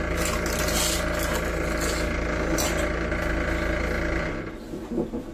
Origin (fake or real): real